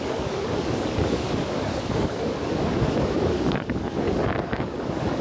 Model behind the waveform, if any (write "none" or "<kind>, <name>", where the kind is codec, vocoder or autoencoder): codec, DAC